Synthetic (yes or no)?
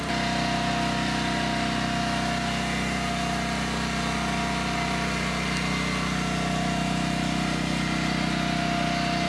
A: no